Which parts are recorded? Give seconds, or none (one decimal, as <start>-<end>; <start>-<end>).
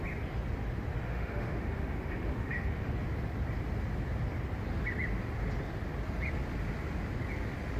0.0-1.1; 2.9-7.8